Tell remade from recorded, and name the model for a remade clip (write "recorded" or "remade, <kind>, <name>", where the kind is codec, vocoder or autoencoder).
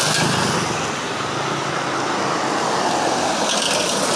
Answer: recorded